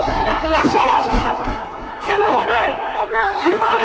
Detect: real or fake fake